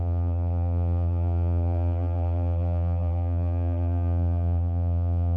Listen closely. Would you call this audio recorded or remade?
remade